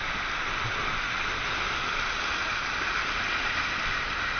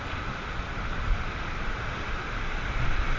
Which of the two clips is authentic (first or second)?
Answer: first